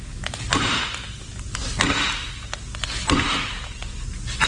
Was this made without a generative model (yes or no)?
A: yes